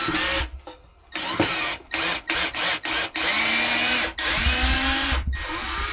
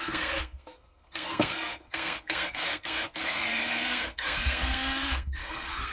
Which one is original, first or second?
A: first